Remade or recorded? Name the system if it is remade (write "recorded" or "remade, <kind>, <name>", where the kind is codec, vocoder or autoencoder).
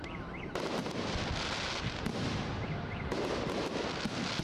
recorded